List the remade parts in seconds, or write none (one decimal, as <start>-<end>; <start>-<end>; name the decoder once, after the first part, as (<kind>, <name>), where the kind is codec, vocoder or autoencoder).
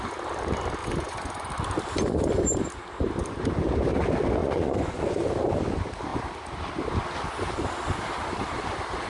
0.8-1.5 (vocoder, Vocos); 4.4-5.3